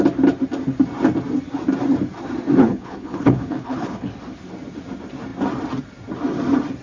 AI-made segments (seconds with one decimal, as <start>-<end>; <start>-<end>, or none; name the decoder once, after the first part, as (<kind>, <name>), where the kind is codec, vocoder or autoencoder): 2.6-4.1 (codec, HILCodec)